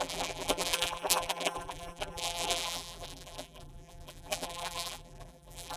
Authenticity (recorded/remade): remade